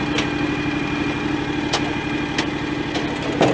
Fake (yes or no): no